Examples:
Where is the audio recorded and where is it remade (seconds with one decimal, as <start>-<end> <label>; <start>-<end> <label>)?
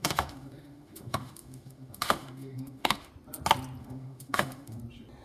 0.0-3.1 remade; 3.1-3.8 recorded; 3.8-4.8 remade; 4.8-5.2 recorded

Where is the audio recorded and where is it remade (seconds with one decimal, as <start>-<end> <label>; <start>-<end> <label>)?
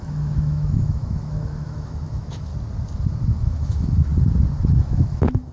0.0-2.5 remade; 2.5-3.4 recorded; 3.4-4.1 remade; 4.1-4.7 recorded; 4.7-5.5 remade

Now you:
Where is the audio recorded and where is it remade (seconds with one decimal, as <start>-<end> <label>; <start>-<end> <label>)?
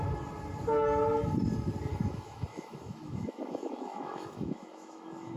0.0-1.9 recorded; 1.9-5.4 remade